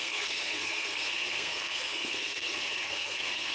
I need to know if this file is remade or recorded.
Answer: remade